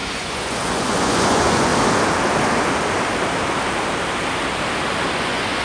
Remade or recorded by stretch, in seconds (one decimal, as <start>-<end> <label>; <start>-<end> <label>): 0.0-1.7 remade; 1.7-5.1 recorded; 5.1-5.6 remade